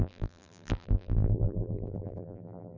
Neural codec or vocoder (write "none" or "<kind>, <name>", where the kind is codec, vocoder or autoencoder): vocoder, BigVGAN v2